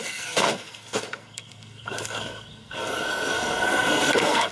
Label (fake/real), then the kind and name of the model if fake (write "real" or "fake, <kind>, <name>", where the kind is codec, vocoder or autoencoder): fake, codec, SNAC